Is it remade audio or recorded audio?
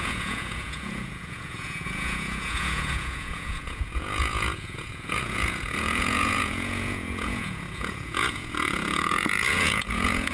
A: remade